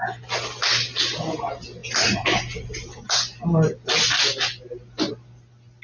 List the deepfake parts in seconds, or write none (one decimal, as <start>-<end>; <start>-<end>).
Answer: none